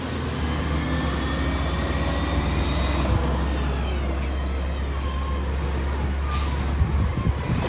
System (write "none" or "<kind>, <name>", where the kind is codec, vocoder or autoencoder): none